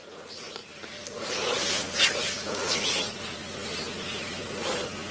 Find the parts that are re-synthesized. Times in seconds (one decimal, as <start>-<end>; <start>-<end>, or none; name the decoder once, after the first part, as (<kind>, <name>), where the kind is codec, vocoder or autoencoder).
none